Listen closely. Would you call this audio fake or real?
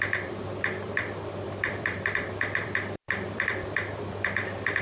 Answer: fake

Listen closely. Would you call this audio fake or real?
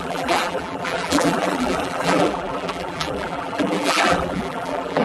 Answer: fake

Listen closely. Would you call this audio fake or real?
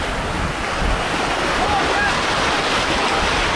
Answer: real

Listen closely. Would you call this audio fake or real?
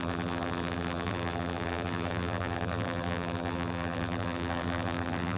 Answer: fake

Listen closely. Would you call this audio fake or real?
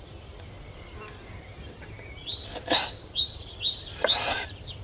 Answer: real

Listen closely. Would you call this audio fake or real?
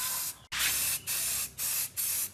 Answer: real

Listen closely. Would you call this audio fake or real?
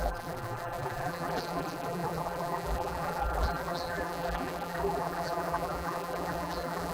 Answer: fake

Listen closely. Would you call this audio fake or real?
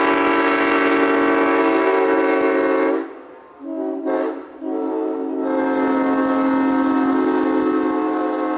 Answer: real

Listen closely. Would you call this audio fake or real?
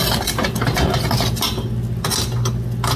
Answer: real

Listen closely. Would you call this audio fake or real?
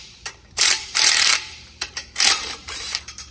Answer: fake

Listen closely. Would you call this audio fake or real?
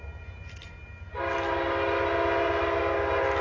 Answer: real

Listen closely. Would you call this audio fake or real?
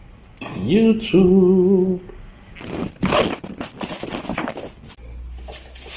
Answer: real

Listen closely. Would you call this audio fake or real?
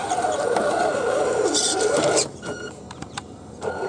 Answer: fake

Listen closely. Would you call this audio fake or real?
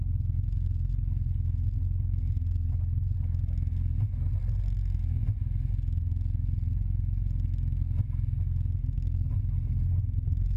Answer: real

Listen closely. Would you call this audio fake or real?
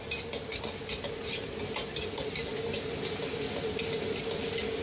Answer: real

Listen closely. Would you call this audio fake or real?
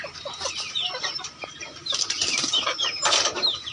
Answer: fake